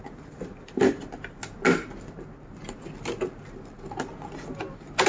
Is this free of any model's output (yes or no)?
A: yes